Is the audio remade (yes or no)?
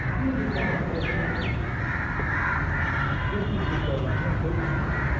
no